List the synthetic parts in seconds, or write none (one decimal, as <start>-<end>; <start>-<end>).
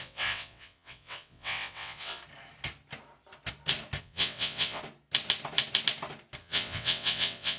0.0-2.2; 4.0-4.8; 6.4-7.6